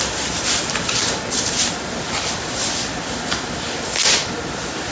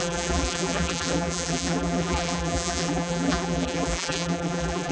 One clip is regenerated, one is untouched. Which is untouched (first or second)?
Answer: first